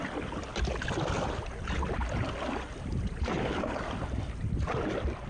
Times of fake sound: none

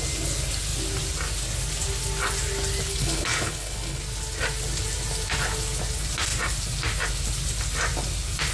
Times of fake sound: 2.9-4.0 (codec, HILCodec)

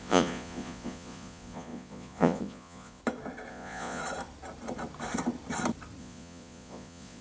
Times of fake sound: 0.0-3.0 (vocoder, Vocos); 3.5-4.0; 6.0-7.2

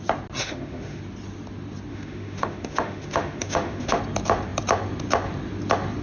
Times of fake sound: 0.4-1.0 (autoencoder, DAC-VAE); 1.9-4.0